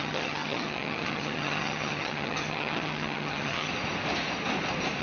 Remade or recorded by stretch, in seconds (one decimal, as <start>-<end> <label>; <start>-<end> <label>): 0.0-3.7 remade; 3.7-5.0 recorded